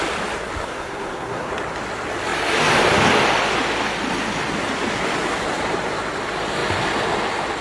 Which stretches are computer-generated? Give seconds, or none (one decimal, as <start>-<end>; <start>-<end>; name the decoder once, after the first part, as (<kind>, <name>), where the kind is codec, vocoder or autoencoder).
0.6-1.5 (codec, SNAC)